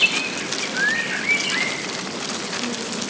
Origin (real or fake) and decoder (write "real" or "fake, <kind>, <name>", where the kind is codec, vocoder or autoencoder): real